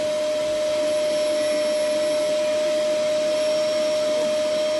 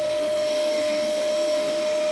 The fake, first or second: second